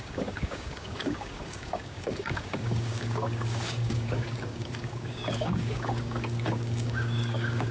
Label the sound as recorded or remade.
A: remade